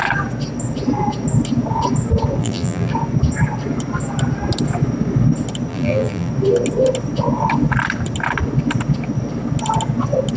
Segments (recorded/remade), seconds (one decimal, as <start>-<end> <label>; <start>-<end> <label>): 0.0-2.4 recorded; 2.4-2.9 remade; 2.9-5.7 recorded; 5.7-6.3 remade; 6.3-10.4 recorded